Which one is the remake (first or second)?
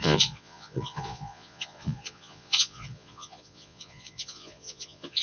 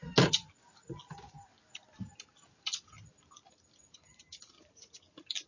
first